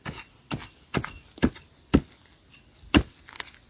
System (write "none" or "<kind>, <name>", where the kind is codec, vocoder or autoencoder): none